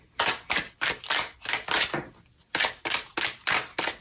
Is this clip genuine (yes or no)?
yes